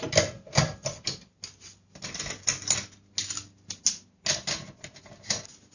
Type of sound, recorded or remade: recorded